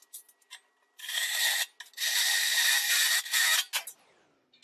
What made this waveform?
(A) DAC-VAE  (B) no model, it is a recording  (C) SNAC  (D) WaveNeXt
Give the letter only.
B